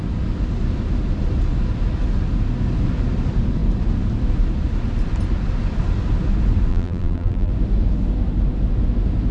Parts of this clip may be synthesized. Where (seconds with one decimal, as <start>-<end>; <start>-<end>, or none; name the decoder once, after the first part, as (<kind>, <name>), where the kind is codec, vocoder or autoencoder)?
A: 6.7-7.5 (vocoder, BigVGAN v2)